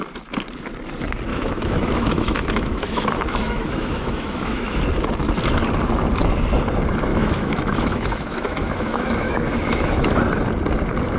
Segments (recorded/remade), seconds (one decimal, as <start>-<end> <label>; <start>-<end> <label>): 0.0-1.3 recorded; 1.3-4.8 remade; 4.8-7.1 recorded; 7.1-10.2 remade; 10.2-11.2 recorded